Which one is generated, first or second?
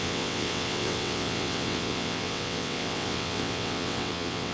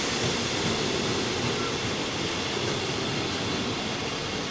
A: first